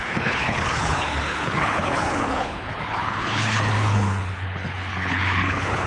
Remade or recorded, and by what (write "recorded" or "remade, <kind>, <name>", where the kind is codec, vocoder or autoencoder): remade, codec, HILCodec